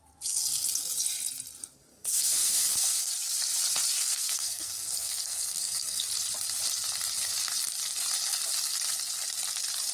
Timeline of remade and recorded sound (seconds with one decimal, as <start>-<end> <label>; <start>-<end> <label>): 0.0-1.9 recorded; 1.9-3.1 remade; 3.1-4.0 recorded; 4.0-6.0 remade; 6.0-9.9 recorded